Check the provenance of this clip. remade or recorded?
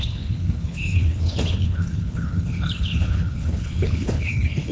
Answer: remade